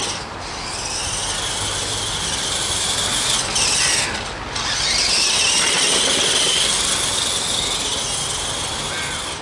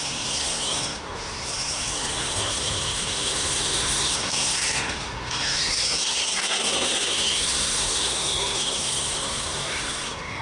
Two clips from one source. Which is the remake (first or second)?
second